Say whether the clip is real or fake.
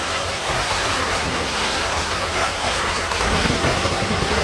fake